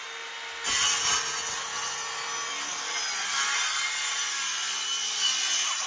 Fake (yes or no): no